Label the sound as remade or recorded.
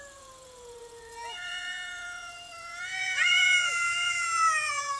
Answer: remade